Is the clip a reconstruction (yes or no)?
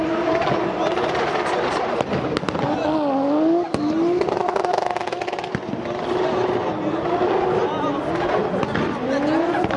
no